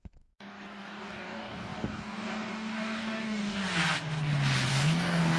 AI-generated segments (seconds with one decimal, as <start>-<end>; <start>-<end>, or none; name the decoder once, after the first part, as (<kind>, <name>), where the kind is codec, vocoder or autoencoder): 0.0-3.6 (codec, DAC); 4.7-5.4